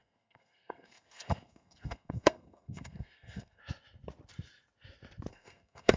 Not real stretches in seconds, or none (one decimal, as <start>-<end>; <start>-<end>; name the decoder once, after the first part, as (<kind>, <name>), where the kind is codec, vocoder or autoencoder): 0.0-3.6 (codec, SNAC); 5.3-6.0